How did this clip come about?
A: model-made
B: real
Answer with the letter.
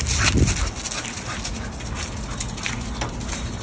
B